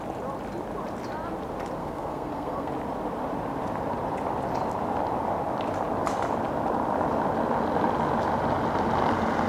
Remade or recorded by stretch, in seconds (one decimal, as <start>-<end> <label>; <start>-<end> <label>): 0.0-1.8 recorded; 1.8-2.7 remade; 2.7-9.5 recorded